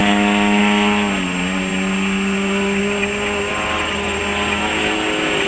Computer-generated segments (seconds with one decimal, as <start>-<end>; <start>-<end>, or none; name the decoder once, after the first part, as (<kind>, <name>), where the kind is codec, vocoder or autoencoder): 3.5-4.2 (vocoder, BigVGAN v2)